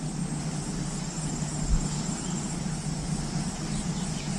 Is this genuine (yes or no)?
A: yes